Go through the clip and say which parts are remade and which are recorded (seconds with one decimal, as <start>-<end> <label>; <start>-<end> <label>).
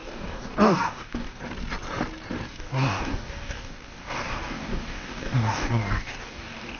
0.0-1.4 remade; 1.4-2.5 recorded; 2.5-6.8 remade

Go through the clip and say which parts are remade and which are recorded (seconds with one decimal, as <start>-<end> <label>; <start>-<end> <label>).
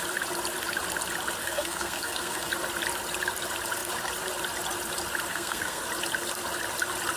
0.0-1.4 recorded; 1.4-2.5 remade; 2.5-5.3 recorded; 5.3-5.8 remade; 5.8-7.2 recorded